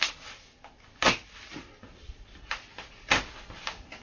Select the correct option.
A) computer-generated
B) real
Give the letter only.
B